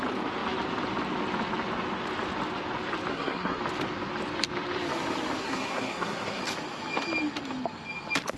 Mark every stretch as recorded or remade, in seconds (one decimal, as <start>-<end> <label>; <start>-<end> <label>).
0.0-3.1 recorded; 3.1-3.6 remade; 3.6-5.4 recorded; 5.4-6.4 remade; 6.4-8.4 recorded